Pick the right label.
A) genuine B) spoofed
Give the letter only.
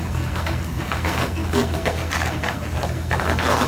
B